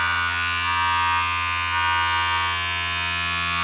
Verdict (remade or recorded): recorded